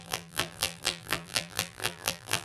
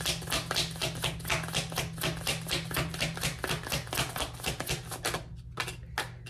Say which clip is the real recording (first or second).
second